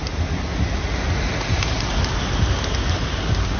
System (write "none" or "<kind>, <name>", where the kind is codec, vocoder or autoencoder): none